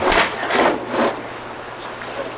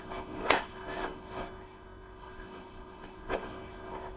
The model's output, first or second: second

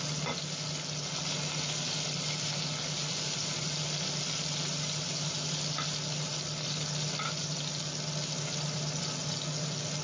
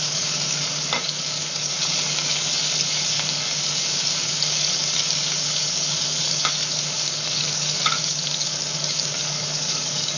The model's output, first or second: second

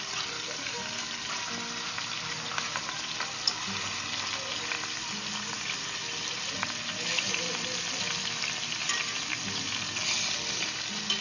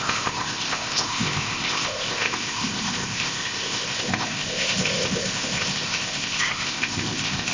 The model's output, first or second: second